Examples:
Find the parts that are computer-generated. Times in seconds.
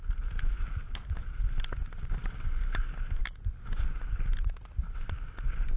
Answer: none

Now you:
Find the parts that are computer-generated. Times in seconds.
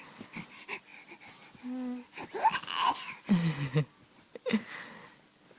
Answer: none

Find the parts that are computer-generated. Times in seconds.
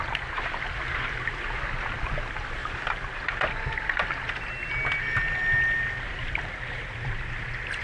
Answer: none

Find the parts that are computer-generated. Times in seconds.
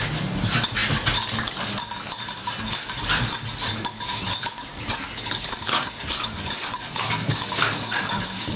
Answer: 4.7-8.6 (codec, DAC)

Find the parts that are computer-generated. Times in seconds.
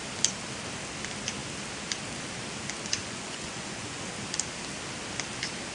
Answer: 3.0-4.1 (vocoder, Vocos)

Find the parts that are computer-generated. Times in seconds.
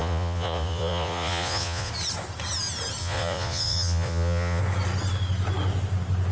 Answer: 0.0-1.9 (vocoder, Vocos); 3.0-4.6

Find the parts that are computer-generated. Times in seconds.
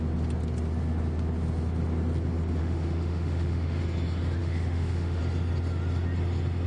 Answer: 2.6-3.8 (autoencoder, DAC-VAE); 4.4-5.2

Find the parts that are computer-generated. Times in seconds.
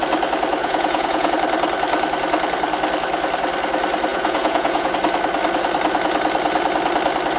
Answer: 0.6-1.3 (vocoder, Vocos); 4.1-4.9